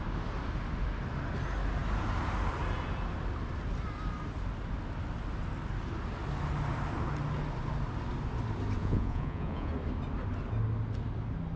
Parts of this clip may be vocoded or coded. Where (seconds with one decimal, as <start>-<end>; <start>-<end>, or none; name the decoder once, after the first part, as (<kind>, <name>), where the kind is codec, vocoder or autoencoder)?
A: 8.8-9.7 (vocoder, Vocos)